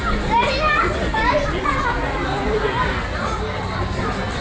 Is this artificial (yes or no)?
no